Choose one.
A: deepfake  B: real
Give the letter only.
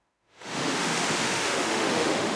A